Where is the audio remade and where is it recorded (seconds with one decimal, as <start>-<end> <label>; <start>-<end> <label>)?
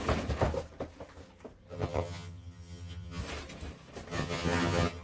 0.0-1.7 recorded; 1.7-3.2 remade; 3.2-4.1 recorded; 4.1-5.0 remade